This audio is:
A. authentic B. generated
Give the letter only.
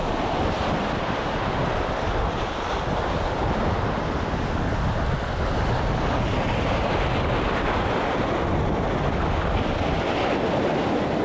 A